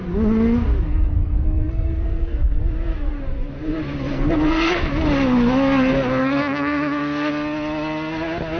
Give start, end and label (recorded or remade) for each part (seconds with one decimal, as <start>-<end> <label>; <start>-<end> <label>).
0.0-1.2 recorded; 1.2-2.6 remade; 2.6-4.1 recorded; 4.1-4.9 remade; 4.9-6.2 recorded; 6.2-7.3 remade; 7.3-8.6 recorded

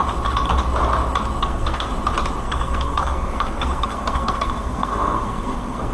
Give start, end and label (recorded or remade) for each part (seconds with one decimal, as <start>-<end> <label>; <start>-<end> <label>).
0.0-1.4 recorded; 1.4-1.9 remade; 1.9-2.4 recorded; 2.4-5.9 remade

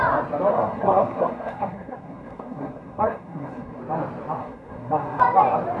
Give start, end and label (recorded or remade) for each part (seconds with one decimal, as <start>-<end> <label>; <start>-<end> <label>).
0.0-0.5 recorded; 0.5-3.8 remade; 3.8-4.4 recorded; 4.4-5.2 remade; 5.2-5.8 recorded